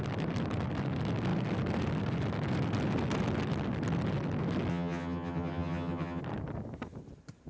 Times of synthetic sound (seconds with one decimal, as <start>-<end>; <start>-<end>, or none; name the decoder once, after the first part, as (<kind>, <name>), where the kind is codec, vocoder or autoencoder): 4.7-6.2 (vocoder, HiFi-GAN)

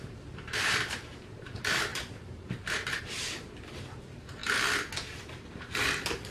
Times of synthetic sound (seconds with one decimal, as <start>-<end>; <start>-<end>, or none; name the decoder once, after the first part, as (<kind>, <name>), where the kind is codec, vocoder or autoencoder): 0.0-4.4 (vocoder, BigVGAN v2); 5.5-6.3